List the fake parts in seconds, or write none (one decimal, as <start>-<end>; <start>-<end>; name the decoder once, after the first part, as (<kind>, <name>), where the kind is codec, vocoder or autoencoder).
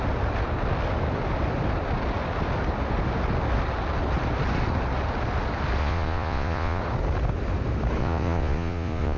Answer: 5.8-6.8 (vocoder, Vocos); 8.0-9.2